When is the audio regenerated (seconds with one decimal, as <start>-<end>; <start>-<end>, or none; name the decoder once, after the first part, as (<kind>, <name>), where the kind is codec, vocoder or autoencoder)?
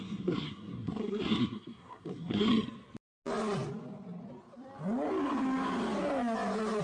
0.0-2.5 (codec, SNAC)